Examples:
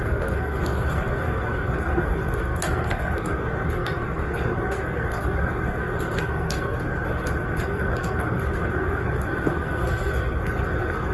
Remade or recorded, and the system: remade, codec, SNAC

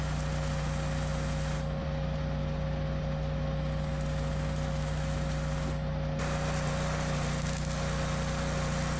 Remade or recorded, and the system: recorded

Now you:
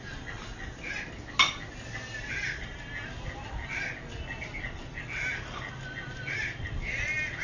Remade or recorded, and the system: recorded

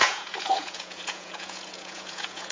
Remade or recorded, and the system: remade, vocoder, Vocos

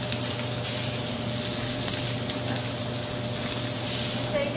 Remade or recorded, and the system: recorded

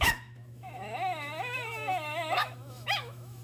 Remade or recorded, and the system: remade, autoencoder, DAC-VAE